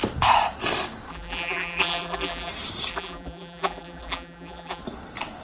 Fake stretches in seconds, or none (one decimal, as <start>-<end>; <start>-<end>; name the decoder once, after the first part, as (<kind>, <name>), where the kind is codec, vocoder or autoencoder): 1.1-2.5 (vocoder, BigVGAN v2); 2.9-4.8